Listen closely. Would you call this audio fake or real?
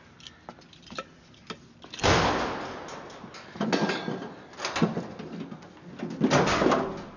real